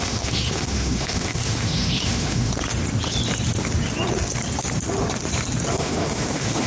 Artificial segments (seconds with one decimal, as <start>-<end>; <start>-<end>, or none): 0.0-2.5; 5.7-6.7